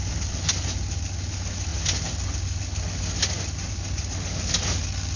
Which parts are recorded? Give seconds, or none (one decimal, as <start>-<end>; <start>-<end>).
0.0-5.2